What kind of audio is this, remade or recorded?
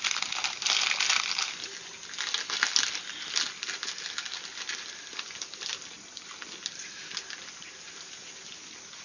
recorded